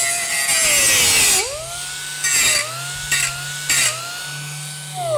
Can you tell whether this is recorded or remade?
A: recorded